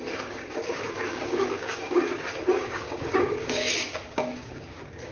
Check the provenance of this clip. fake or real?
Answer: fake